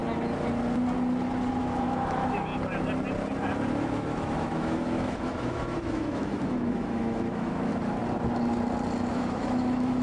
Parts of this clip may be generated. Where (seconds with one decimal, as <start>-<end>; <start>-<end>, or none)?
1.6-2.5; 3.7-7.7; 9.1-10.0